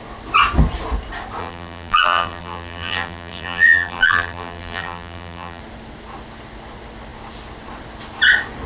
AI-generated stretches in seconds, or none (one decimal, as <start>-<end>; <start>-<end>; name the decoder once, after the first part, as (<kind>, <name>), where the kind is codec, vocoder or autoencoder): 1.4-5.6 (vocoder, BigVGAN v2)